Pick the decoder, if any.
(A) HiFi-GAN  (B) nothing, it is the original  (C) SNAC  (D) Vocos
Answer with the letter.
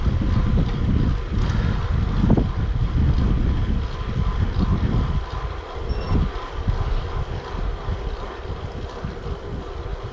B